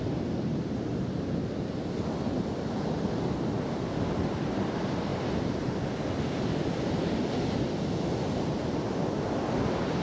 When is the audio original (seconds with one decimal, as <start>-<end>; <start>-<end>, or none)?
0.0-10.0